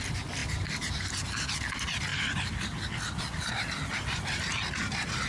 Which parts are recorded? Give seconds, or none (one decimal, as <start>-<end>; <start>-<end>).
0.0-2.1; 3.5-5.3